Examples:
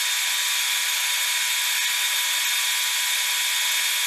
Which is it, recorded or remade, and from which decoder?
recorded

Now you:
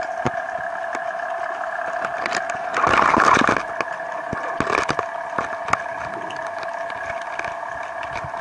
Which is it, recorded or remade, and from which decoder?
recorded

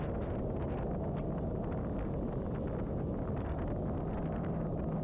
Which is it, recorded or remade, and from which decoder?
recorded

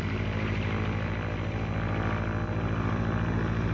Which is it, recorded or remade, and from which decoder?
recorded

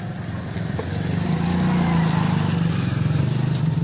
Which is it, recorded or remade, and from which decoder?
recorded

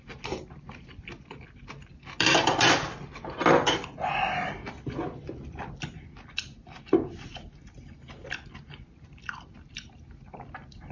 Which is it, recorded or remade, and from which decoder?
recorded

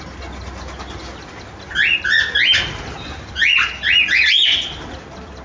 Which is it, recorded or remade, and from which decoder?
recorded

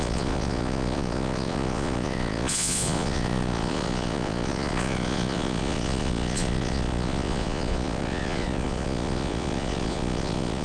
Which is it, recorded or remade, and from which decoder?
remade, vocoder, Vocos